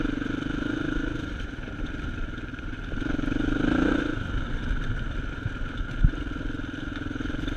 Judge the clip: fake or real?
fake